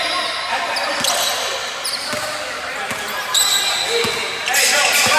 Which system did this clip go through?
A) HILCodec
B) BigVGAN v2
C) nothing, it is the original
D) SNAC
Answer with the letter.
C